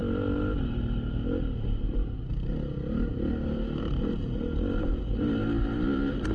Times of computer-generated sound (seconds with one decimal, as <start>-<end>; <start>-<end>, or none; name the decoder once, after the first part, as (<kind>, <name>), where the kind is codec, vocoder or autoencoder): none

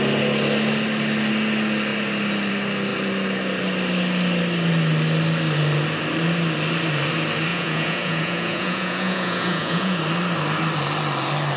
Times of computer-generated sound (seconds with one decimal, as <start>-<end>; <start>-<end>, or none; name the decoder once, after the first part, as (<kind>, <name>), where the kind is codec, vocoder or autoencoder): 7.5-10.0 (vocoder, Vocos)

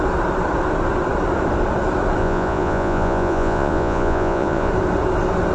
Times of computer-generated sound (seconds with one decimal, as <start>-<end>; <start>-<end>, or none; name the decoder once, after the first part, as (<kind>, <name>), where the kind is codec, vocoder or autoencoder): 2.2-4.7 (vocoder, Vocos)

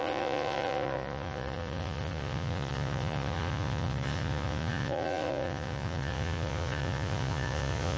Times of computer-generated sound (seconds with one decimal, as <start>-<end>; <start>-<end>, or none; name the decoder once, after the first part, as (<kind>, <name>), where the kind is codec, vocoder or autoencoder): 0.0-8.0 (vocoder, Vocos)

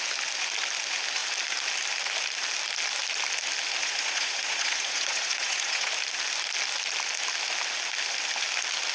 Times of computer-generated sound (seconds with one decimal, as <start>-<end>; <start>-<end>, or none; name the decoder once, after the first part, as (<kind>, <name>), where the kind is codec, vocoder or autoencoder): 3.8-5.9 (vocoder, Vocos)